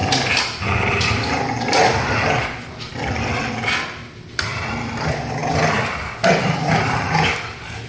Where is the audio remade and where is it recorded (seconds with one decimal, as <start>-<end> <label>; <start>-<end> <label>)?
0.0-7.9 recorded